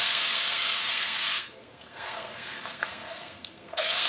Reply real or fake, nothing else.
fake